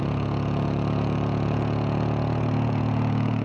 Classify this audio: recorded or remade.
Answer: remade